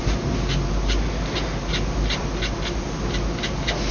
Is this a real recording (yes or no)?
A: yes